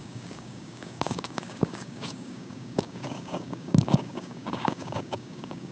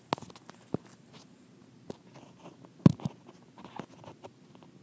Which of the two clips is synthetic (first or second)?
first